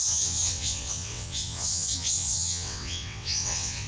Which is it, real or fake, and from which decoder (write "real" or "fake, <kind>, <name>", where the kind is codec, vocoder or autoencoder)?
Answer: fake, vocoder, WaveNeXt